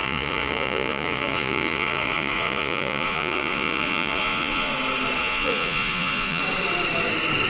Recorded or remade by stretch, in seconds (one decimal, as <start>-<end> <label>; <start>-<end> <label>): 0.0-4.7 remade; 4.7-5.2 recorded; 5.2-6.4 remade; 6.4-7.5 recorded